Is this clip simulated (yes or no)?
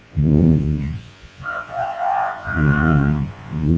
yes